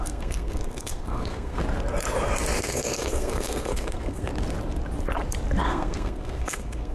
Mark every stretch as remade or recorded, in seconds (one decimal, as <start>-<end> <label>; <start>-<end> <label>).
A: 0.0-1.6 remade; 1.6-2.6 recorded; 2.6-4.3 remade; 4.3-5.6 recorded; 5.6-6.9 remade

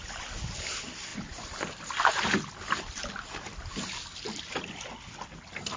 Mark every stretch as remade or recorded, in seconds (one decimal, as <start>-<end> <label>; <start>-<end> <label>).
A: 0.0-5.8 recorded

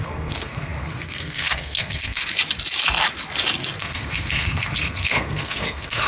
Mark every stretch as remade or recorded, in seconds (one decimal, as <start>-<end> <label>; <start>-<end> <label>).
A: 0.0-2.2 remade; 2.2-3.8 recorded; 3.8-6.1 remade